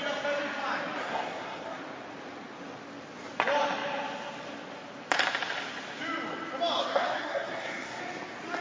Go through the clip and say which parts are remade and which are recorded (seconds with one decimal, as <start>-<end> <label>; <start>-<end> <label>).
0.0-1.0 recorded; 1.0-1.8 remade; 1.8-6.8 recorded; 6.8-8.0 remade; 8.0-8.6 recorded